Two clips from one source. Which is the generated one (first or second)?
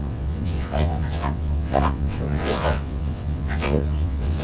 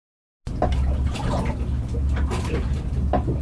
first